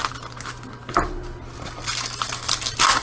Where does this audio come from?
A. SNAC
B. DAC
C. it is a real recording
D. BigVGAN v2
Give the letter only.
C